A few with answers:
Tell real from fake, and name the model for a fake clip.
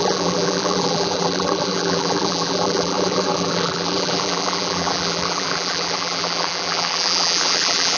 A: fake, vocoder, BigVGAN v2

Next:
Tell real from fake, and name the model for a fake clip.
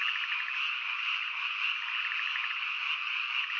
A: real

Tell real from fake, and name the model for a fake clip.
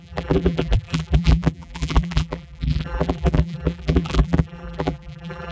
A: fake, vocoder, BigVGAN v2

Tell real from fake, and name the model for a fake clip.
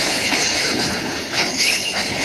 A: fake, codec, HILCodec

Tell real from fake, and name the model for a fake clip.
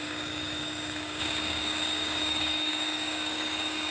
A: fake, codec, DAC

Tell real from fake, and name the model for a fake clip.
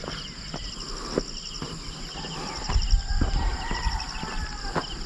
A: real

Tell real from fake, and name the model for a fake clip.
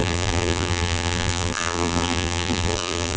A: fake, vocoder, BigVGAN v2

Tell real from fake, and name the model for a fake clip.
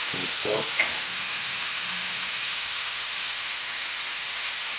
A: fake, autoencoder, DAC-VAE